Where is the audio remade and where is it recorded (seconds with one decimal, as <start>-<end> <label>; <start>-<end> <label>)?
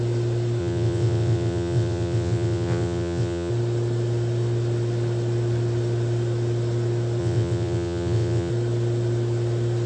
0.0-0.6 recorded; 0.6-3.5 remade; 3.5-7.2 recorded; 7.2-8.5 remade; 8.5-9.9 recorded